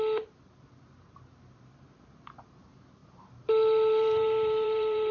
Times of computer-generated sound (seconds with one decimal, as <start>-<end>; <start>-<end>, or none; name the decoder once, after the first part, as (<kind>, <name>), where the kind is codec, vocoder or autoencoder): 3.0-5.1 (vocoder, BigVGAN v2)